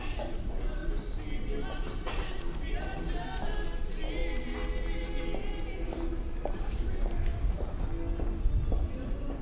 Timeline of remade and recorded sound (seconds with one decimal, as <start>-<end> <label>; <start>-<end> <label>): 0.0-0.8 remade; 0.8-1.8 recorded; 1.8-4.2 remade; 4.2-6.5 recorded; 6.5-7.3 remade; 7.3-8.8 recorded; 8.8-9.4 remade